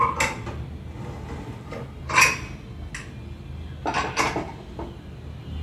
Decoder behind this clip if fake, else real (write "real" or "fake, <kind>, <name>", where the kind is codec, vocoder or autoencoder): real